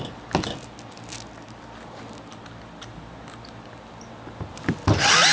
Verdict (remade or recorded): recorded